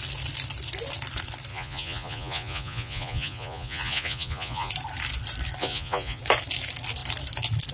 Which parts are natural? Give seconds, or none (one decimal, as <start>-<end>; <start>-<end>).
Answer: 0.0-1.5; 4.7-5.6; 6.2-7.7

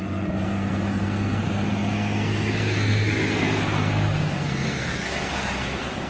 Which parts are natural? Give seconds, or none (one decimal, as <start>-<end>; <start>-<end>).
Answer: none